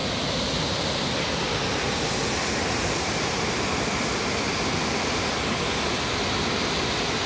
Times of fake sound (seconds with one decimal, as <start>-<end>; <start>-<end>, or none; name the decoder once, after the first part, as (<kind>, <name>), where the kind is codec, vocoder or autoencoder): none